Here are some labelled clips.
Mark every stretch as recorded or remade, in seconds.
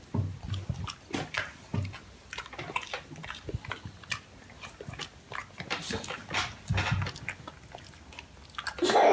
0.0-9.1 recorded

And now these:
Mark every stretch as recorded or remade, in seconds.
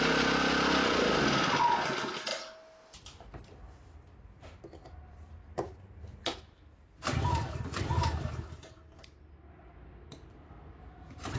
0.0-11.4 recorded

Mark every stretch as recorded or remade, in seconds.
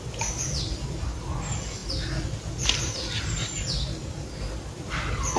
0.0-5.4 recorded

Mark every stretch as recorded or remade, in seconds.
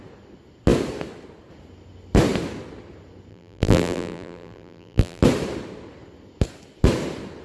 0.0-3.3 recorded; 3.3-5.2 remade; 5.2-7.4 recorded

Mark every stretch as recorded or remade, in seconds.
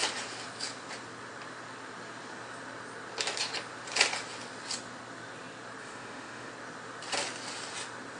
0.0-5.8 recorded; 5.8-6.5 remade; 6.5-8.2 recorded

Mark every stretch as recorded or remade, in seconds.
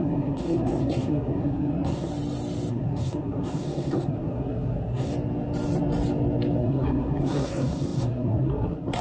0.0-2.1 remade; 2.1-2.7 recorded; 2.7-5.1 remade; 5.1-6.6 recorded; 6.6-9.0 remade